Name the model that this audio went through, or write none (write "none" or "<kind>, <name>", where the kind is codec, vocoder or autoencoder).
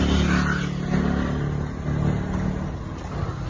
none